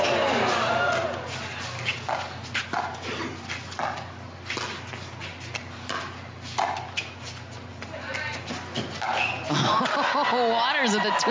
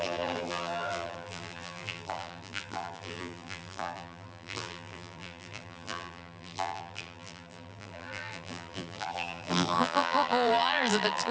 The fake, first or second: second